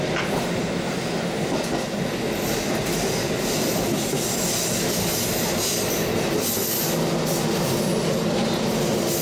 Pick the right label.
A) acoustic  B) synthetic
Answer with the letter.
A